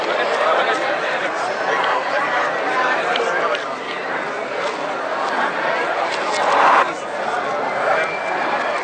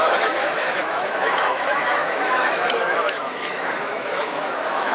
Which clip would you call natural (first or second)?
first